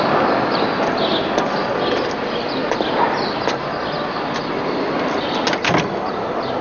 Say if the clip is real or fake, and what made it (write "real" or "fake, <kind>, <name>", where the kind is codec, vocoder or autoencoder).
real